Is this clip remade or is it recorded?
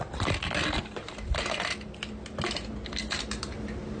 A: recorded